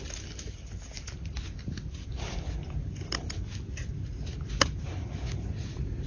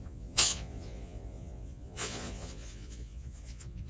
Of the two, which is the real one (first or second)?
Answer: first